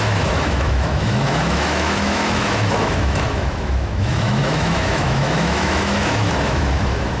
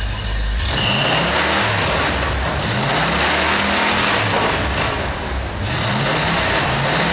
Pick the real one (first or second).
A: second